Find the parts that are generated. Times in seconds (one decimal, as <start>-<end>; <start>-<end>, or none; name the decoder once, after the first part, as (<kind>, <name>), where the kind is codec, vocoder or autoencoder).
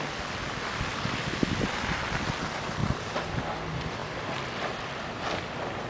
0.9-1.4 (vocoder, BigVGAN v2); 2.8-3.4; 4.0-5.4